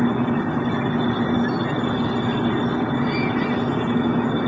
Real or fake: real